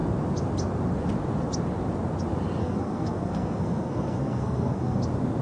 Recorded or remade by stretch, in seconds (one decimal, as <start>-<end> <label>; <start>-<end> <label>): 0.0-2.6 recorded; 2.6-5.0 remade; 5.0-5.4 recorded

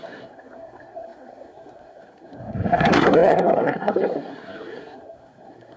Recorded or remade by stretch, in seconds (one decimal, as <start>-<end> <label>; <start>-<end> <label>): 0.0-5.8 remade

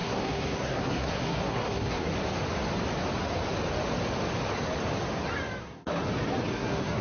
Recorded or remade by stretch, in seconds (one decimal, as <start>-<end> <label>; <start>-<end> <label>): 0.0-2.1 remade; 2.1-5.6 recorded; 5.6-6.0 remade; 6.0-6.5 recorded; 6.5-7.0 remade

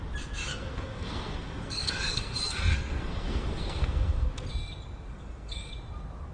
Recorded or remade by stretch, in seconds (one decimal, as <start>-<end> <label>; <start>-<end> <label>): 0.0-0.5 recorded; 0.5-4.3 remade; 4.3-5.1 recorded; 5.1-5.7 remade; 5.7-6.3 recorded